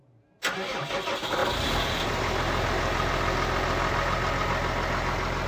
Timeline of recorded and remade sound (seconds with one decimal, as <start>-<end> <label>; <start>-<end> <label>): 0.0-5.5 recorded